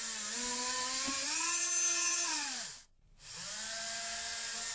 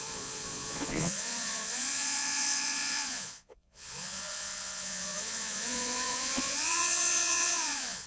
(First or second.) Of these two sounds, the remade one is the second